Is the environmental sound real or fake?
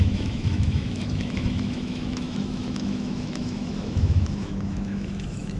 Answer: fake